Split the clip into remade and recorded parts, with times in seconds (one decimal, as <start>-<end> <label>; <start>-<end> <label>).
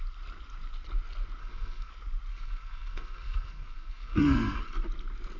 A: 0.0-1.4 recorded; 1.4-1.9 remade; 1.9-2.3 recorded; 2.3-4.6 remade; 4.6-5.4 recorded